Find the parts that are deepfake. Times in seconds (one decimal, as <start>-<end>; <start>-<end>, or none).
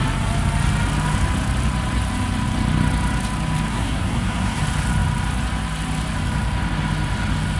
3.7-4.6